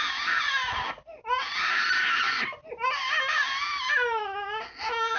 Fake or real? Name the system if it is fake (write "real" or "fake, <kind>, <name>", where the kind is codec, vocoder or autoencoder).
real